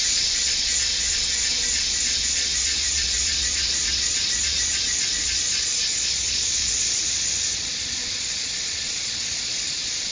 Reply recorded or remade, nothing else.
remade